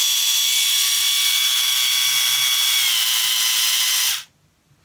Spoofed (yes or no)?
no